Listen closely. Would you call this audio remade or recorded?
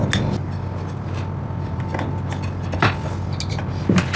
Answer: recorded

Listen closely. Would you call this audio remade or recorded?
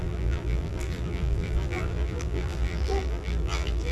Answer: remade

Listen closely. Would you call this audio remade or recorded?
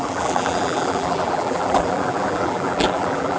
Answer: remade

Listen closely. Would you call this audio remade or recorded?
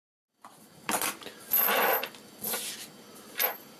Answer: recorded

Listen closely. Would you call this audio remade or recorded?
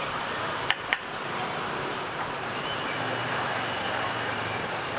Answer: remade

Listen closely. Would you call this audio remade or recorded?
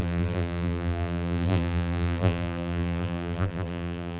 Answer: remade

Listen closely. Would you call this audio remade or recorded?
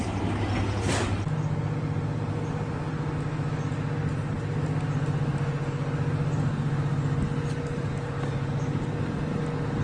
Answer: recorded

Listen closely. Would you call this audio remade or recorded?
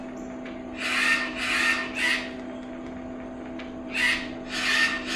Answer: recorded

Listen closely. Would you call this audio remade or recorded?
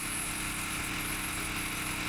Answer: recorded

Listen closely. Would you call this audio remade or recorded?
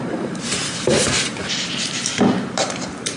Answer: remade